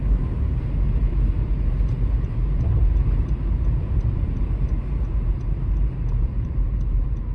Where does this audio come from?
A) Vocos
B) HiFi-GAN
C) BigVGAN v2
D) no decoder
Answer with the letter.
C